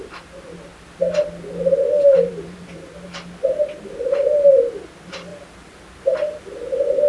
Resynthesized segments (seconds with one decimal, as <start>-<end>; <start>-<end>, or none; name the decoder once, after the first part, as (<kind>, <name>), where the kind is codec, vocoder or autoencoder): none